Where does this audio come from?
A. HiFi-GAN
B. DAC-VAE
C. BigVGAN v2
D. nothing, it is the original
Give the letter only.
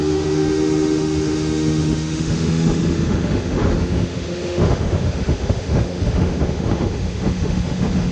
B